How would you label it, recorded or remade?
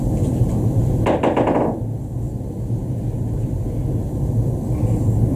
recorded